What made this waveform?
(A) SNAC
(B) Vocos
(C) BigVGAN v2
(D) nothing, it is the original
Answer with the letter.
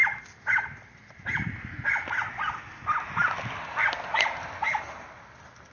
D